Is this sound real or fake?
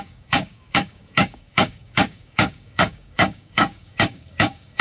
fake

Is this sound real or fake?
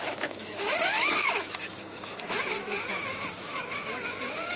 fake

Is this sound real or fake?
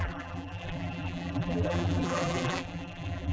fake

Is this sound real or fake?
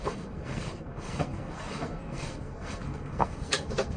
fake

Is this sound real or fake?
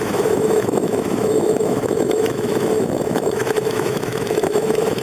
fake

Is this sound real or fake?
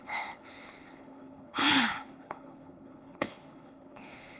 fake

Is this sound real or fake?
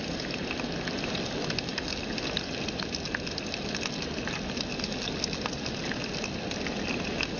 real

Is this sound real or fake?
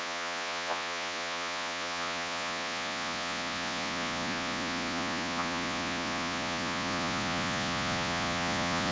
fake